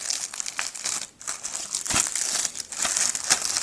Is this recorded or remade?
recorded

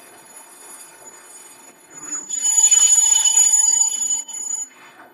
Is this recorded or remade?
remade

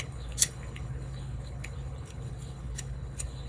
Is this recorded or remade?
remade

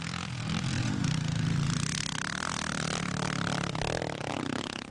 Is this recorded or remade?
recorded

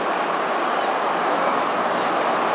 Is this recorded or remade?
recorded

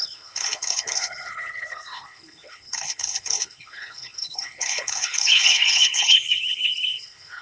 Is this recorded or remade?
remade